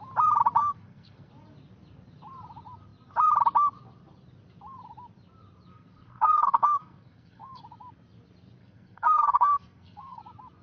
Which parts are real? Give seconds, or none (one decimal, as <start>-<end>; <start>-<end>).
0.0-0.6; 1.3-5.7; 7.6-8.6; 10.2-10.6